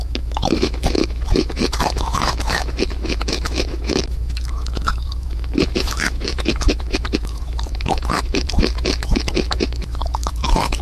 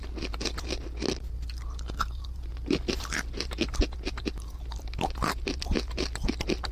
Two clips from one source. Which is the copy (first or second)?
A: first